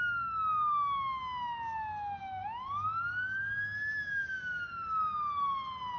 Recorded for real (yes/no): yes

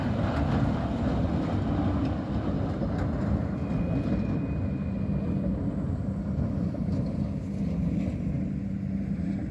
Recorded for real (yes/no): yes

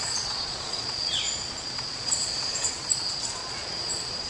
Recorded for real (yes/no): no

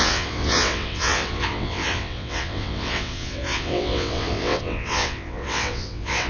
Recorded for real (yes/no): no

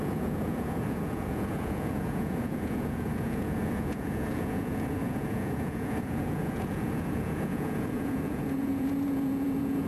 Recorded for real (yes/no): no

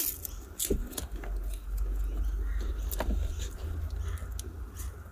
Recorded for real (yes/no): yes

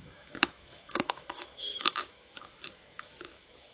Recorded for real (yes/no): no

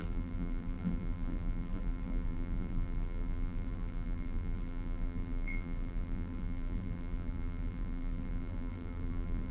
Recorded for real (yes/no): no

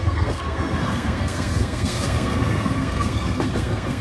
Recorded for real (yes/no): no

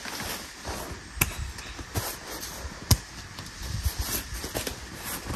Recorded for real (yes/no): yes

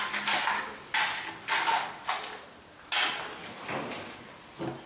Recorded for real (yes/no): yes